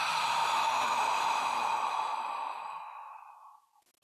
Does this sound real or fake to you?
real